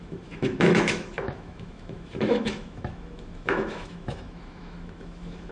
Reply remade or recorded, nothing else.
remade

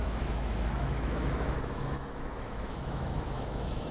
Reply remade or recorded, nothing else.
remade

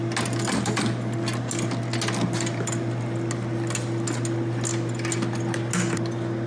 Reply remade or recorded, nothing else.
recorded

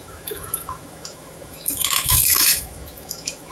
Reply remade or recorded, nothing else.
remade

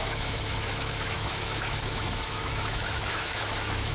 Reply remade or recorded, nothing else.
remade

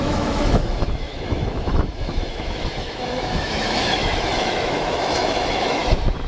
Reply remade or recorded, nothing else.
remade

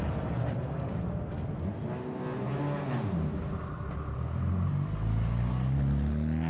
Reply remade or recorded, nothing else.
recorded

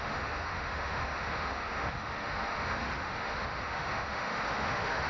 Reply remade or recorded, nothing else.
remade